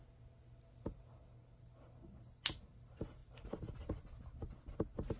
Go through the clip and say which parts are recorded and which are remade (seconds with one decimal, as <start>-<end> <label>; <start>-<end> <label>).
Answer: 0.0-5.2 recorded